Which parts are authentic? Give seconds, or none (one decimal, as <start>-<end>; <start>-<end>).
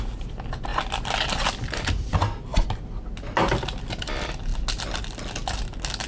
0.0-6.1